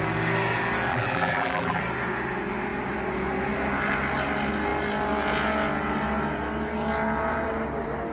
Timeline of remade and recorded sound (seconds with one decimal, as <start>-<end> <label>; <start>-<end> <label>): 0.0-0.9 recorded; 0.9-1.8 remade; 1.8-8.1 recorded